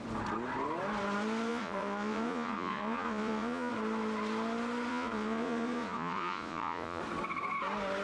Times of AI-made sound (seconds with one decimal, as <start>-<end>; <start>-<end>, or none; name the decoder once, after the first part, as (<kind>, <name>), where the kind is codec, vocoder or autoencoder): 1.5-3.7 (vocoder, Vocos); 4.9-7.0